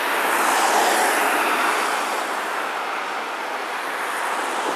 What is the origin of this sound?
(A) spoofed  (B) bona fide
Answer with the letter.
B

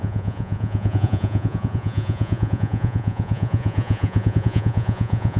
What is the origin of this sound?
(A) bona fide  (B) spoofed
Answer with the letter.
B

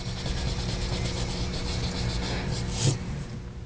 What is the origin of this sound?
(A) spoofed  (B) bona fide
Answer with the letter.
B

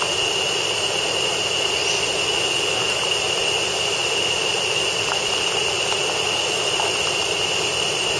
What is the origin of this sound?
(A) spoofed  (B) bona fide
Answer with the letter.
B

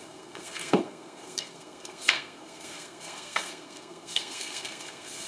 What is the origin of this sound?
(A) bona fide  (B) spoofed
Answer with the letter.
B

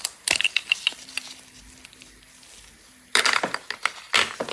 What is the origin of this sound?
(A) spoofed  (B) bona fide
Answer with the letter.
B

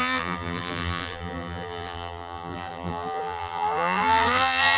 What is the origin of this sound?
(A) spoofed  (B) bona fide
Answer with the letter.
A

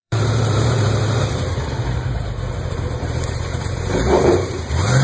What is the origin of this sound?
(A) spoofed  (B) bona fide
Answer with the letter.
A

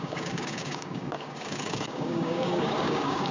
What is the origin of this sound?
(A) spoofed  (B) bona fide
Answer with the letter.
A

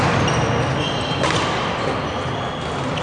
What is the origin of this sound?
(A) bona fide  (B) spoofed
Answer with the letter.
A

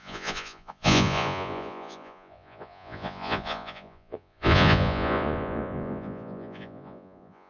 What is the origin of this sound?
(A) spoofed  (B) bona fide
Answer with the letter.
A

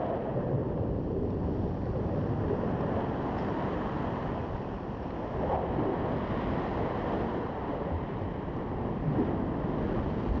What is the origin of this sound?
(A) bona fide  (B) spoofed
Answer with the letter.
A